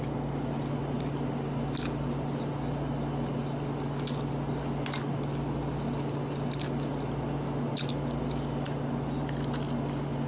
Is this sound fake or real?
real